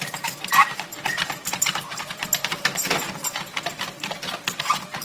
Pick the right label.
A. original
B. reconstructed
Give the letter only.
A